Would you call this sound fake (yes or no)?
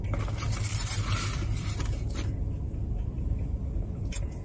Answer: no